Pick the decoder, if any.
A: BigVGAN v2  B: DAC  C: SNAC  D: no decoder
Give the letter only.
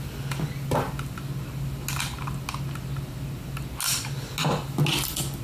D